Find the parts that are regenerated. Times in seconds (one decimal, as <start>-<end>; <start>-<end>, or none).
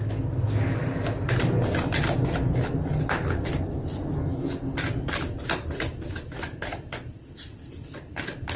none